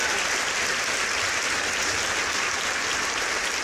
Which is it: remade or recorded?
recorded